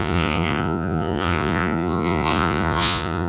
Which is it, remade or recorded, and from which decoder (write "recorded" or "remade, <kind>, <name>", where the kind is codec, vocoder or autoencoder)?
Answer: remade, vocoder, Vocos